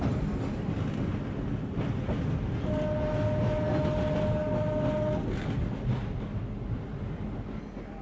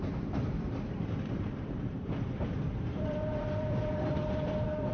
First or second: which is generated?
second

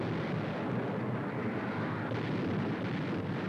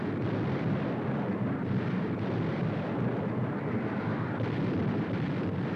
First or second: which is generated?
second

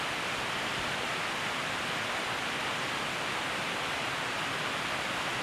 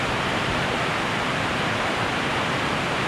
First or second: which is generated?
second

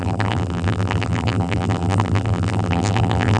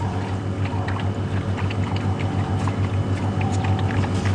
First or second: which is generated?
first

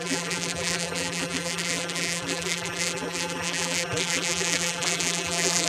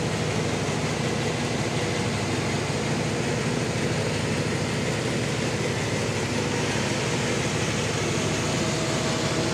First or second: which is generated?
first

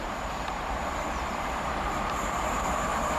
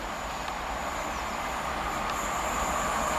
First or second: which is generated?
first